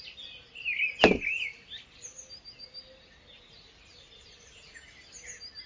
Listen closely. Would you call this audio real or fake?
real